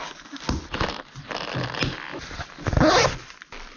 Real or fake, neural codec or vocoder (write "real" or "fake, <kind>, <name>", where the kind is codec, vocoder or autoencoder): real